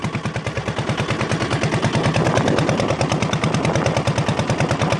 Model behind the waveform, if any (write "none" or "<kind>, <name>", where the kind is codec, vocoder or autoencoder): none